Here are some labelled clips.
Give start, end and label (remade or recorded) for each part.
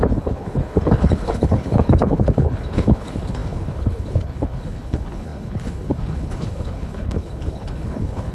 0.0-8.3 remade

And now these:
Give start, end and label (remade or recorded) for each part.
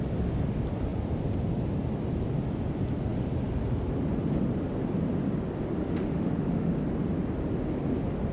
0.0-5.8 recorded; 5.8-6.7 remade; 6.7-8.3 recorded